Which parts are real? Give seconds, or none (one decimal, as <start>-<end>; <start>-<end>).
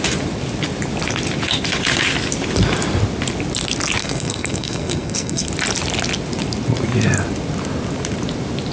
0.0-4.0; 5.5-8.7